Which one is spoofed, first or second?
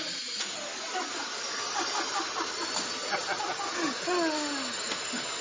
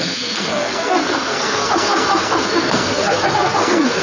second